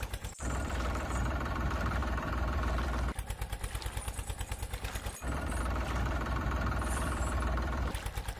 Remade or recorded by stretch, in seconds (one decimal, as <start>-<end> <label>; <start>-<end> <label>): 0.0-8.4 remade